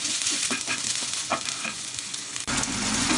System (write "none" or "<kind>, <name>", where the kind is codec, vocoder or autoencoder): vocoder, Vocos